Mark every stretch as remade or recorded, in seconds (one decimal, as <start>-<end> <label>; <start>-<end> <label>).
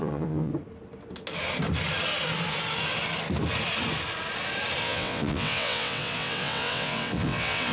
0.0-0.5 remade; 0.5-4.8 recorded; 4.8-7.7 remade